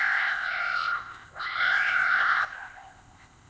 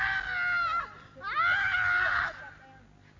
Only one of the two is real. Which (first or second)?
second